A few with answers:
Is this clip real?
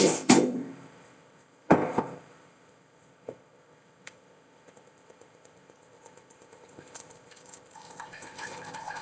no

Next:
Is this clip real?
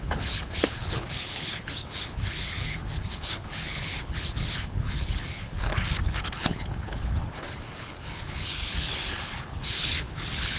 no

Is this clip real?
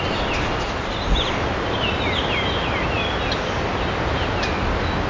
yes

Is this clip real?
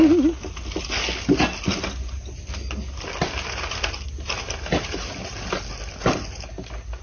yes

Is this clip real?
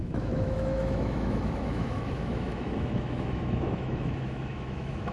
no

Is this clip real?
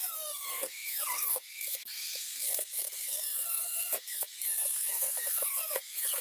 no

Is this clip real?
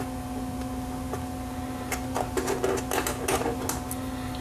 yes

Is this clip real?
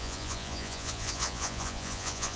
no